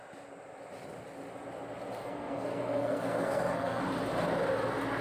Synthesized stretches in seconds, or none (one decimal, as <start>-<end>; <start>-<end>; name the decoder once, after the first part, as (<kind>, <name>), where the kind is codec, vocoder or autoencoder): 2.0-3.8 (codec, SNAC)